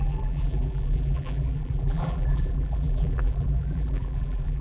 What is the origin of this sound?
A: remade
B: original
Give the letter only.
A